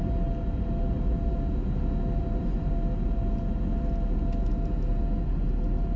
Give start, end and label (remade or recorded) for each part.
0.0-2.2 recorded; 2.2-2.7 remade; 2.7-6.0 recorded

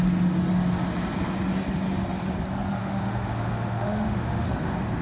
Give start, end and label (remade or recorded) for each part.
0.0-2.8 recorded; 2.8-4.5 remade; 4.5-5.0 recorded

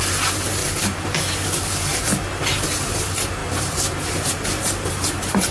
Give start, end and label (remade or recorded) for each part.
0.0-5.5 recorded